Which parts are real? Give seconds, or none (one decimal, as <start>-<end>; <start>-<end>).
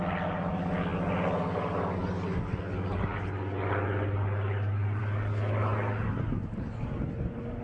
0.0-7.6